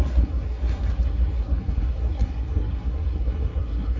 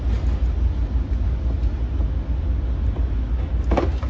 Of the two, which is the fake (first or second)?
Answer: first